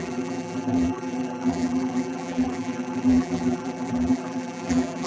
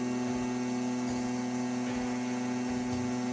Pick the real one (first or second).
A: second